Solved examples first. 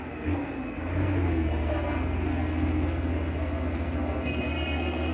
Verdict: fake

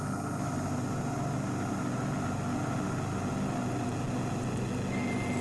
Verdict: real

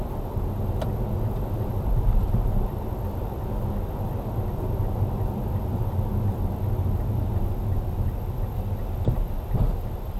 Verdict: fake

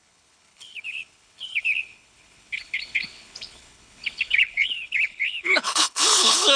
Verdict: fake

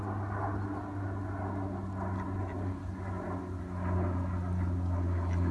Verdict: real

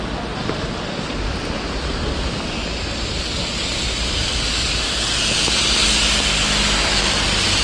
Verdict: real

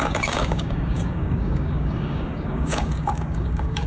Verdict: fake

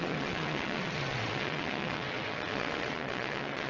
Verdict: fake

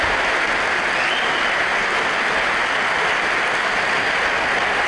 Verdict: real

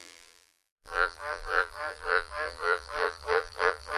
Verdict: fake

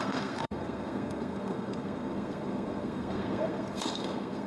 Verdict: fake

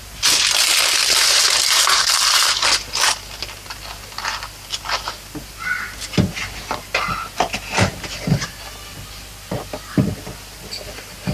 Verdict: real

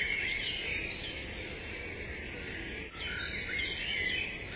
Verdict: real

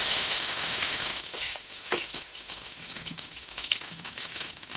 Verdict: fake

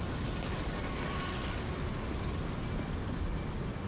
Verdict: real